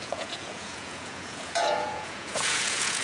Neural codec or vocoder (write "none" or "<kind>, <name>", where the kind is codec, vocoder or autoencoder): vocoder, Vocos